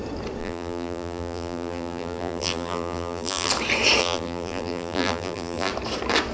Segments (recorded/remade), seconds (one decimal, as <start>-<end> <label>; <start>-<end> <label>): 0.0-0.4 recorded; 0.4-3.5 remade; 3.5-4.0 recorded; 4.0-5.7 remade; 5.7-6.3 recorded